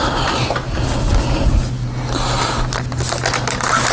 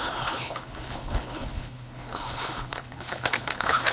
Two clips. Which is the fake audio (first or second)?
second